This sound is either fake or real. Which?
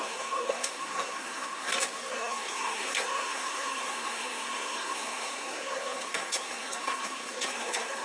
fake